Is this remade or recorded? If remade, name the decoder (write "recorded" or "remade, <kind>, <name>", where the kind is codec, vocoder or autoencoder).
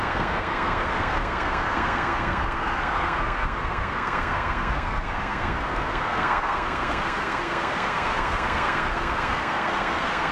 remade, codec, SNAC